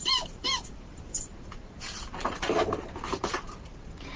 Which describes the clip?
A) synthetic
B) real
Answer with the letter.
A